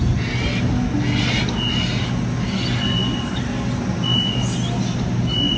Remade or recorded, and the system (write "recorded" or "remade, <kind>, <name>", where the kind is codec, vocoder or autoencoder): recorded